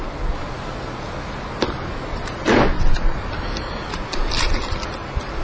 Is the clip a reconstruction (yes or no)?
no